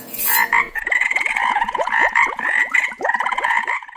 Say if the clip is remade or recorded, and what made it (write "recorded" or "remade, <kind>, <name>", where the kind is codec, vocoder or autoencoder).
remade, vocoder, Vocos